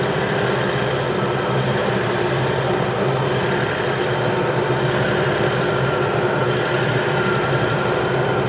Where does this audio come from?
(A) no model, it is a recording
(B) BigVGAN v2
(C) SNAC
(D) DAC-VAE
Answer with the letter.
A